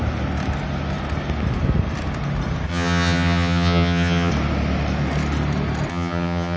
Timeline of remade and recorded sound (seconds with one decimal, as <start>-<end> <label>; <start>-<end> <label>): 0.0-2.7 recorded; 2.7-4.3 remade; 4.3-5.9 recorded; 5.9-6.6 remade